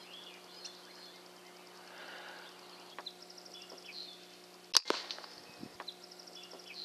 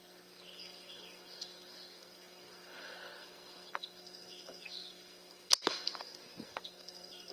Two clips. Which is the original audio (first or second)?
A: first